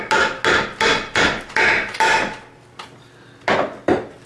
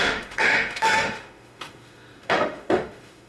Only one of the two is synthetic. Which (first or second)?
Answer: second